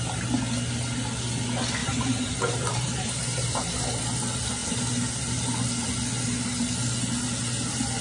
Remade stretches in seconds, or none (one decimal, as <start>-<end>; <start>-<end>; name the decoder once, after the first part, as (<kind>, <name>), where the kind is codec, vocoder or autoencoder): 1.8-3.8 (vocoder, BigVGAN v2)